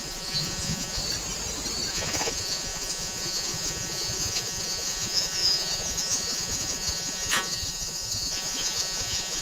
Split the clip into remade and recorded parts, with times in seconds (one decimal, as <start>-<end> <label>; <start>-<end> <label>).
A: 0.0-1.0 remade; 1.0-1.9 recorded; 1.9-9.4 remade